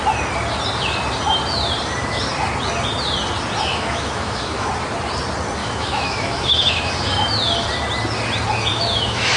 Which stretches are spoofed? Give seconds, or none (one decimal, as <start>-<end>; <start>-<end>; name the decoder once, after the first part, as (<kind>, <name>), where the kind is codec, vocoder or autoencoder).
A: 3.7-4.7 (autoencoder, DAC-VAE); 5.6-6.9; 8.7-9.4